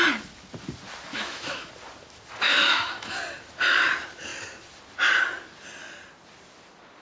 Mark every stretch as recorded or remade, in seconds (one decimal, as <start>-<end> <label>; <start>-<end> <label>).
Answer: 0.0-1.1 recorded; 1.1-1.7 remade; 1.7-2.5 recorded; 2.5-3.2 remade; 3.2-7.0 recorded